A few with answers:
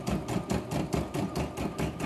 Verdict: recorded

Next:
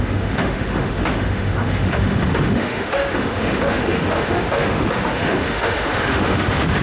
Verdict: remade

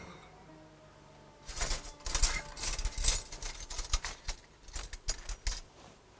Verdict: recorded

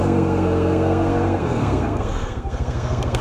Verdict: remade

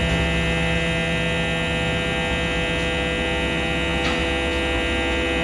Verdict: recorded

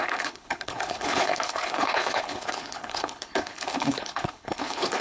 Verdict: remade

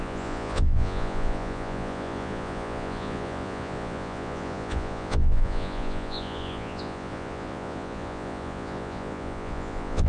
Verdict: remade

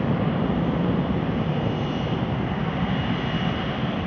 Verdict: recorded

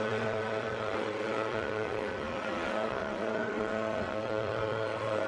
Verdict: remade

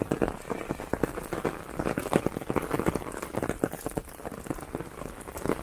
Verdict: remade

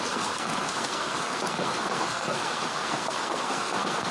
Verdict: remade